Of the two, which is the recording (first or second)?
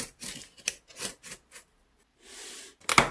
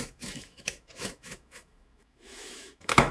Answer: first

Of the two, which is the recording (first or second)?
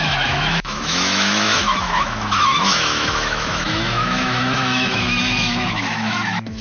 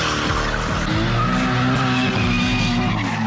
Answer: second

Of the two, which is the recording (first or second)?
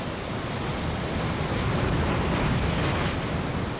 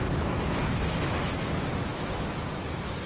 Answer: first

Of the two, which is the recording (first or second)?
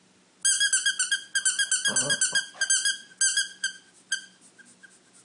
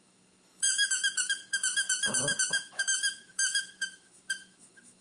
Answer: first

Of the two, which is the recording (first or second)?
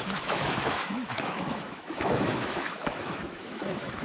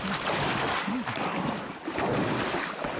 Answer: second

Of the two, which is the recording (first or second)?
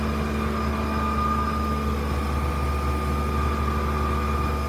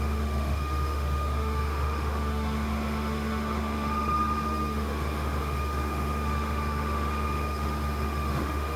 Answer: first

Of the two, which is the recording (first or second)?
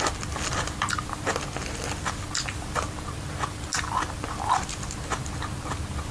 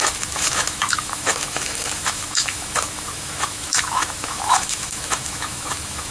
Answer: first